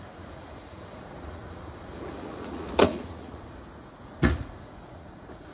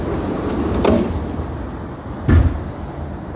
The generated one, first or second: first